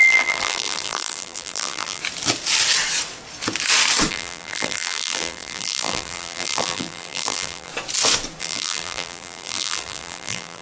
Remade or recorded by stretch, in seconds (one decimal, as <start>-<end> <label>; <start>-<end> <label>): 0.0-2.0 remade; 2.0-4.1 recorded; 4.1-7.7 remade; 7.7-8.4 recorded; 8.4-10.6 remade